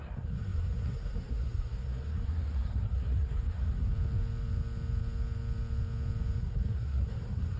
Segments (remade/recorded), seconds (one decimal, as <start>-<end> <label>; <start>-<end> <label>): 0.0-3.9 remade; 3.9-6.4 recorded; 6.4-7.6 remade